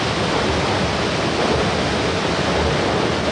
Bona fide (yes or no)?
yes